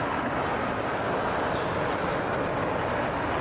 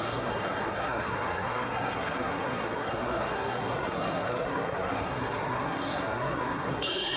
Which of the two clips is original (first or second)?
first